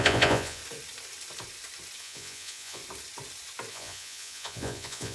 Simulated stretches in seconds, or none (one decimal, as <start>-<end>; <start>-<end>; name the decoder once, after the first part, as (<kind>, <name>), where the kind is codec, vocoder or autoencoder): 0.0-0.6 (vocoder, Vocos); 2.0-2.8; 3.7-5.1